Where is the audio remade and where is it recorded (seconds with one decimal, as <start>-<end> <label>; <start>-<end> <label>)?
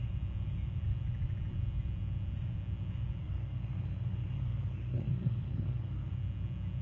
0.0-3.2 recorded; 3.2-6.1 remade; 6.1-6.8 recorded